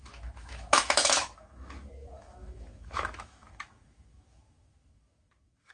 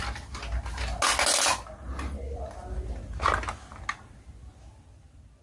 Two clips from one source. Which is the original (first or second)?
second